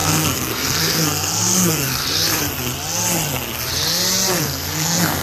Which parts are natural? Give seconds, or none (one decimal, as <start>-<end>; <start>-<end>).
2.0-4.4